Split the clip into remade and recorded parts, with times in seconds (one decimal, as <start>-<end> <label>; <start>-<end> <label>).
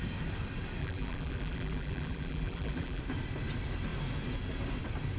0.0-0.8 recorded; 0.8-3.0 remade; 3.0-5.2 recorded